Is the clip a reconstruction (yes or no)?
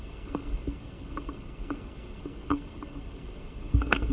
yes